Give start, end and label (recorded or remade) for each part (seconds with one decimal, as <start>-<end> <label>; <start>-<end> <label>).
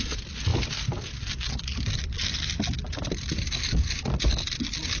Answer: 0.0-5.0 remade